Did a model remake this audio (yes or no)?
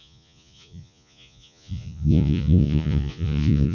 yes